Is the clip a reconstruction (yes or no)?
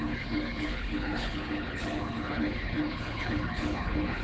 yes